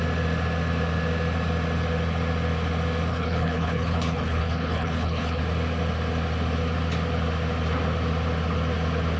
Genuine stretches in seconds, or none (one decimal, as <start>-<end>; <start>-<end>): 0.0-3.1; 5.4-9.2